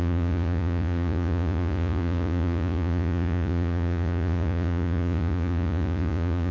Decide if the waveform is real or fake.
fake